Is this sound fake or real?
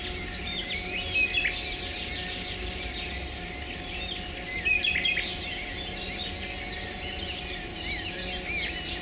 real